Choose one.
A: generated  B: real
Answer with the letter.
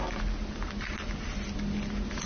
B